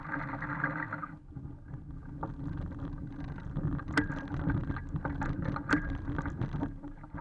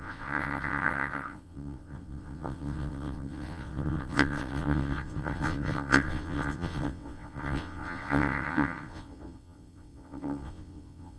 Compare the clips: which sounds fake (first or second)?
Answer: second